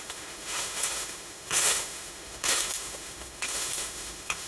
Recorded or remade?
remade